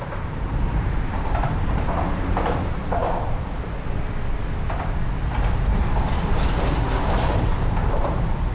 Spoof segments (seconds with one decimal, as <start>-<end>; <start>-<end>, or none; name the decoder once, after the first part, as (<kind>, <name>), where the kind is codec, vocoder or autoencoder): 0.0-3.0 (vocoder, BigVGAN v2); 7.1-8.5